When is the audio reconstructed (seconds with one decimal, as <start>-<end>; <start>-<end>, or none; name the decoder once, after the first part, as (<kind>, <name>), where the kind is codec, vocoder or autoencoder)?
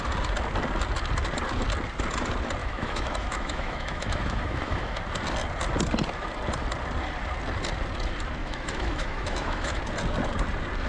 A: 2.6-5.0 (autoencoder, DAC-VAE); 8.4-9.8